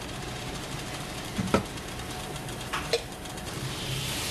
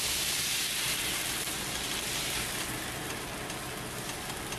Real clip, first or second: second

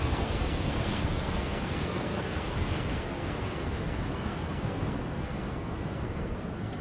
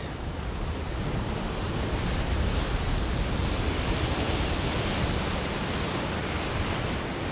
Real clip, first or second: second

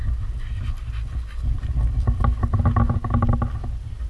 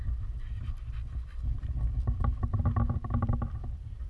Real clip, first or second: first